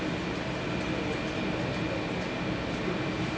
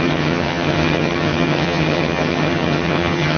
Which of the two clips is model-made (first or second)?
second